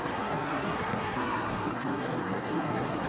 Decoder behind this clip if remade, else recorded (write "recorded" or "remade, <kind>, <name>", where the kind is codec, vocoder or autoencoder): remade, codec, SNAC